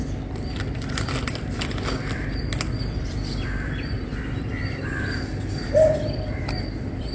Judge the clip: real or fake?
fake